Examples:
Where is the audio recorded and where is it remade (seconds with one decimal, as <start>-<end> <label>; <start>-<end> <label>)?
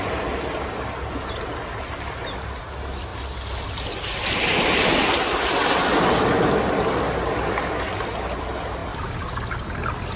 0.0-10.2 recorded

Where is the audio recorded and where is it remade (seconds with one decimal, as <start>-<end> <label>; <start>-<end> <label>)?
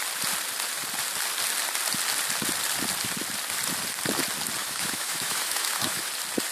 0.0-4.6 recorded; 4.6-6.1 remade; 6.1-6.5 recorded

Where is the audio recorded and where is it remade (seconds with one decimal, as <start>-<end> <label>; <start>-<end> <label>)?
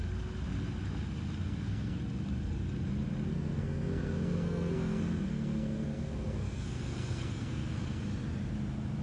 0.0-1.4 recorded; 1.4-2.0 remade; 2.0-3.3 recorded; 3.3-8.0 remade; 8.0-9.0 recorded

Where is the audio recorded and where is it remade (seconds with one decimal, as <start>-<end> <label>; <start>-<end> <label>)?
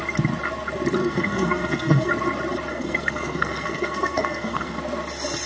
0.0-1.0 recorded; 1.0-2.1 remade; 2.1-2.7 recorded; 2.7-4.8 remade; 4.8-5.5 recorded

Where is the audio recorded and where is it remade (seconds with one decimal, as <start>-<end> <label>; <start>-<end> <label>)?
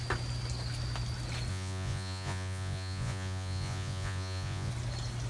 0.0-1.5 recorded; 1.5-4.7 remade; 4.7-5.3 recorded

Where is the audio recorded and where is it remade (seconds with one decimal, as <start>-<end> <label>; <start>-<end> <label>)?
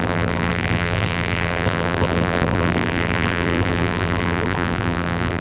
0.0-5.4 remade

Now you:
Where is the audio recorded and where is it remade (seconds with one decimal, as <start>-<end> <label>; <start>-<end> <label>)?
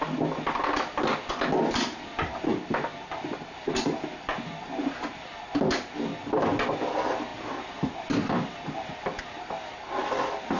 0.0-10.6 recorded